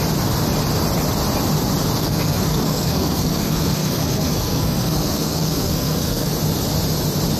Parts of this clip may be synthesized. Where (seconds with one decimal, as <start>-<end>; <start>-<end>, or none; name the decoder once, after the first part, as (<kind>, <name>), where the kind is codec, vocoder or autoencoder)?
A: 2.0-6.3 (codec, SNAC)